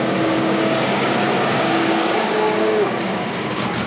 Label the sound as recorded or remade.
remade